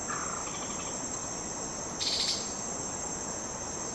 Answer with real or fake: real